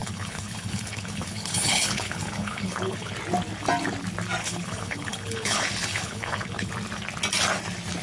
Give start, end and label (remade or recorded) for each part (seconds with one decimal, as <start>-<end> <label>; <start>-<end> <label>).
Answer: 0.0-3.1 remade; 3.1-4.4 recorded; 4.4-6.7 remade; 6.7-8.0 recorded